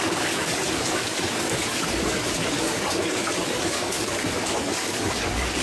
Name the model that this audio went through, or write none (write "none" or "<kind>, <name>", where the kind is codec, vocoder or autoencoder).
codec, DAC